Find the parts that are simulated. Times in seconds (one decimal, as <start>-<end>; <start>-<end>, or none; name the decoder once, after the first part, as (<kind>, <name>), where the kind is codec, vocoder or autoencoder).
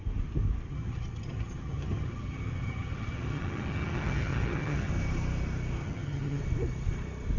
0.7-4.9 (vocoder, HiFi-GAN); 5.8-6.4